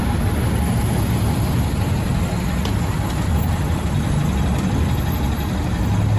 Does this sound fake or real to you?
real